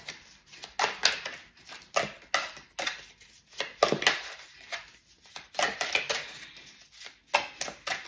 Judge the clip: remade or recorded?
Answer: recorded